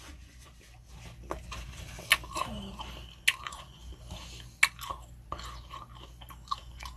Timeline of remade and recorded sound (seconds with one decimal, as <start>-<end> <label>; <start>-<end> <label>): 0.0-0.5 remade; 0.5-3.4 recorded; 3.4-3.9 remade; 3.9-6.6 recorded; 6.6-7.0 remade